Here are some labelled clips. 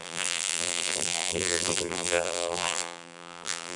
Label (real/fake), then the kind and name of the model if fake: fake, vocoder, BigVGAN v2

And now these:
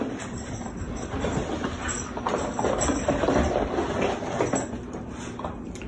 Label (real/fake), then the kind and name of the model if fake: real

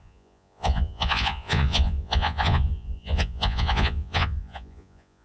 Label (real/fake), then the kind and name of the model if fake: fake, vocoder, Vocos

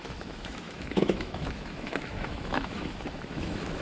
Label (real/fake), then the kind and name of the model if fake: fake, autoencoder, DAC-VAE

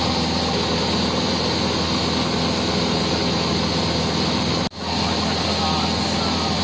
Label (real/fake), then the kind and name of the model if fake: real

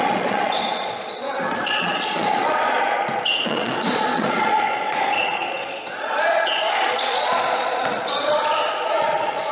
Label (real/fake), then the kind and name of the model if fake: fake, vocoder, Vocos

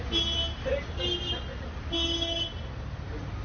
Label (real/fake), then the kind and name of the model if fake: real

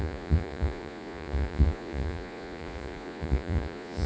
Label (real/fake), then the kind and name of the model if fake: fake, vocoder, Vocos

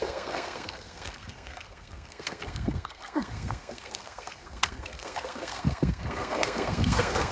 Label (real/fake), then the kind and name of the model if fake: fake, codec, SNAC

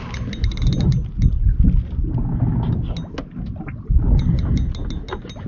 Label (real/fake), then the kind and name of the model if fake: real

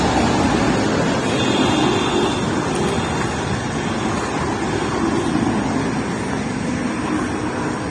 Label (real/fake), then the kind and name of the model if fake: real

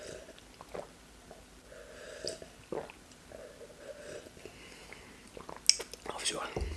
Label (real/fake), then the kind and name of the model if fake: real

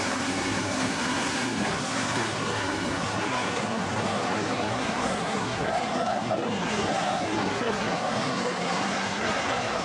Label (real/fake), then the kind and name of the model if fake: fake, codec, SNAC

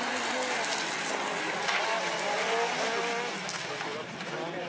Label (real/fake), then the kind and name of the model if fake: real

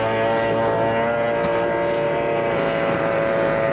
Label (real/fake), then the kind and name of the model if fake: real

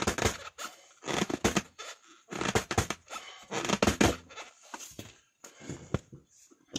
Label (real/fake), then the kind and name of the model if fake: real